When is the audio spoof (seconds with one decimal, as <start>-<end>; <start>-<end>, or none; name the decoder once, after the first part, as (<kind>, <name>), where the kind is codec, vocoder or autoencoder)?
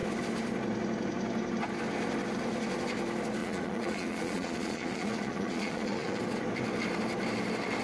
3.4-6.2 (vocoder, Vocos)